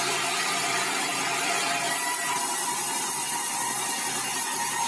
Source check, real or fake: real